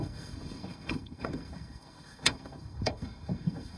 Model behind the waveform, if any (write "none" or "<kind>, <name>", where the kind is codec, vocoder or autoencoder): codec, SNAC